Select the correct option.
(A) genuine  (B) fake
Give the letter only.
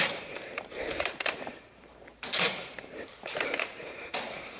B